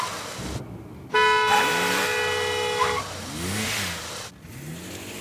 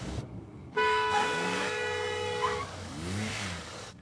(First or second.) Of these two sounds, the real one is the first